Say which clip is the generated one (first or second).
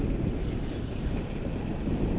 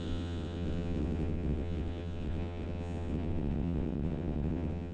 second